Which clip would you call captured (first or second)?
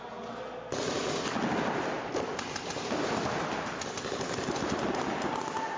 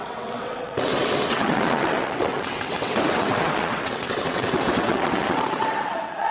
first